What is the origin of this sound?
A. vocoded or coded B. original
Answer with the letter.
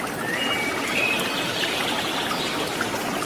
B